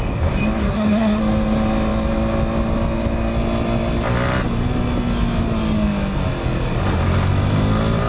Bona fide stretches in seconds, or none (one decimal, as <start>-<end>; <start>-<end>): 0.0-0.6; 1.2-8.1